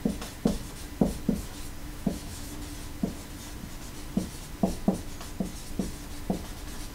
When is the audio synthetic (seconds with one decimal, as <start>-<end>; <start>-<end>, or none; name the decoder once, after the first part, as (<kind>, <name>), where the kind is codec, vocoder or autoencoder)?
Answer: 1.8-2.5 (autoencoder, DAC-VAE)